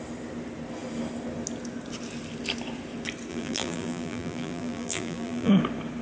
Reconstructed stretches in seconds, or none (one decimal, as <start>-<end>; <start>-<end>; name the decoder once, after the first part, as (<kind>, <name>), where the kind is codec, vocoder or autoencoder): 3.3-5.5 (vocoder, BigVGAN v2)